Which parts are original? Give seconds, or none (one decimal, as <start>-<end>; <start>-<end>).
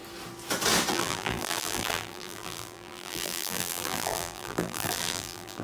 0.0-0.9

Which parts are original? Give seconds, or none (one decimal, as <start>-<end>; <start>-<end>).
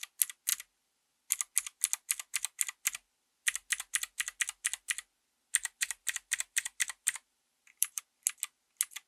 0.0-5.6; 8.0-9.1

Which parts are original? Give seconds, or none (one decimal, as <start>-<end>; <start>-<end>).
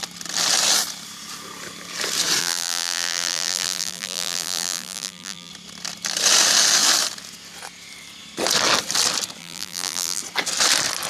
0.0-2.4; 5.5-9.4; 10.2-11.1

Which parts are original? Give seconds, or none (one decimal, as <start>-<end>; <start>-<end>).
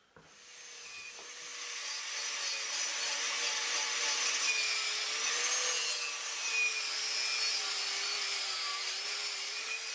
2.9-7.6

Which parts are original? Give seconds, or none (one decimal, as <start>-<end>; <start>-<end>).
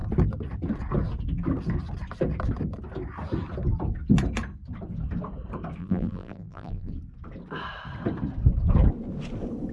0.0-5.8; 6.9-9.7